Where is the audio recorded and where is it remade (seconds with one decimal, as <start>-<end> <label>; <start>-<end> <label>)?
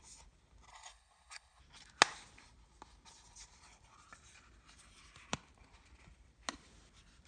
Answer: 0.0-0.7 recorded; 0.7-1.6 remade; 1.6-7.3 recorded